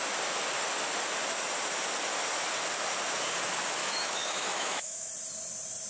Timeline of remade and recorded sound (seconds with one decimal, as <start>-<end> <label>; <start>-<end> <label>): 0.0-3.8 recorded; 3.8-5.1 remade; 5.1-5.9 recorded